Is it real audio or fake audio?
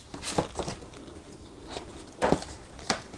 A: real